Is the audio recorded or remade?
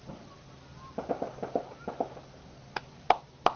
recorded